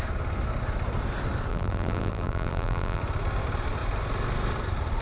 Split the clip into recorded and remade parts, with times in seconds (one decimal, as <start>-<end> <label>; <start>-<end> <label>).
0.0-1.5 recorded; 1.5-3.0 remade; 3.0-5.0 recorded